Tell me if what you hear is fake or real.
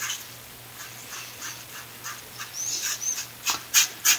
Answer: real